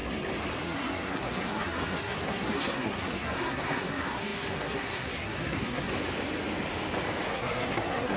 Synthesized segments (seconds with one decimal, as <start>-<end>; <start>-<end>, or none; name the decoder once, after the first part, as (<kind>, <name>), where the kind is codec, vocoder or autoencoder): 0.6-5.9 (codec, SNAC); 7.3-8.2